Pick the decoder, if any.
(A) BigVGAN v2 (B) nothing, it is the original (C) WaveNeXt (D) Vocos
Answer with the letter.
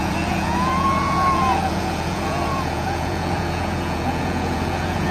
D